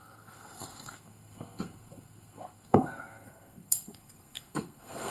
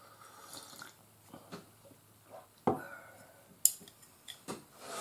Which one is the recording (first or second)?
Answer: second